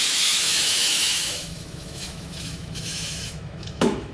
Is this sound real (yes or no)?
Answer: no